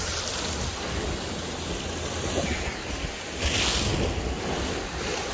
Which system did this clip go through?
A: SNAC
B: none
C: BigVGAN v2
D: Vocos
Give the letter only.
B